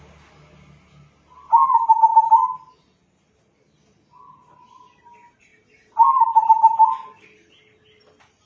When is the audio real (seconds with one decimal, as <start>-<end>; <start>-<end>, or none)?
0.0-8.5